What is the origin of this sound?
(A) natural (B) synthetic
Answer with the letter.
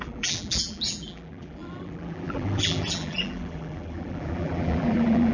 B